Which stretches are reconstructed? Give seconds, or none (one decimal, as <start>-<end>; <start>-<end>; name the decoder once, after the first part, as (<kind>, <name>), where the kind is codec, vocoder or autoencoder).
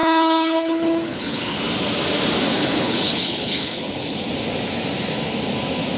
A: 0.0-1.6 (codec, HILCodec); 2.5-4.3